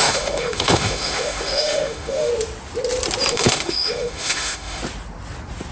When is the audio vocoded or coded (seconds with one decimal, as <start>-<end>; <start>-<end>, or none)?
0.0-2.3; 3.3-4.8